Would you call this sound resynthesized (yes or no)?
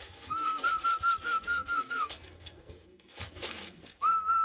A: yes